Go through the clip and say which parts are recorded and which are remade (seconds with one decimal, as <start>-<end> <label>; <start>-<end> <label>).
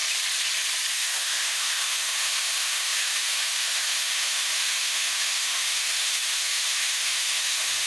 0.0-0.9 recorded; 0.9-7.9 remade